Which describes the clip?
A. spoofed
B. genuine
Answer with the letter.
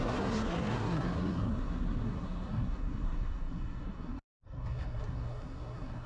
A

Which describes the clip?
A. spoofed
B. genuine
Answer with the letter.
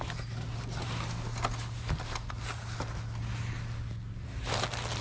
B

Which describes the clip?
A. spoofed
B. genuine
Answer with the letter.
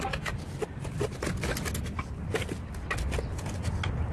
B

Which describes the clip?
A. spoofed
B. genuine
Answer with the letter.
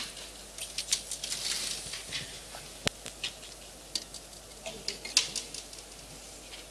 B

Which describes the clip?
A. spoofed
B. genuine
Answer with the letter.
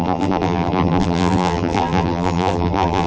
A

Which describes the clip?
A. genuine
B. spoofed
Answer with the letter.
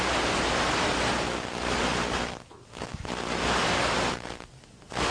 A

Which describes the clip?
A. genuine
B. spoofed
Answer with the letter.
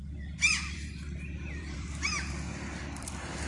B